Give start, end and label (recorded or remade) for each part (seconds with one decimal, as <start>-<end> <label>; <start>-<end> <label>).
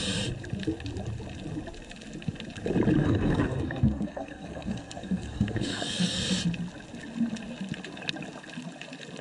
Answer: 0.0-3.0 recorded; 3.0-6.2 remade; 6.2-9.2 recorded